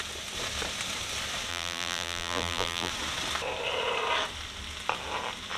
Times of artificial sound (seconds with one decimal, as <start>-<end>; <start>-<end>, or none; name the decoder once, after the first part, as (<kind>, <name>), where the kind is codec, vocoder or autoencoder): 1.5-2.9 (vocoder, BigVGAN v2)